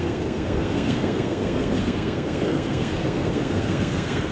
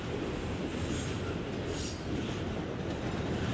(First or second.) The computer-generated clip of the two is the first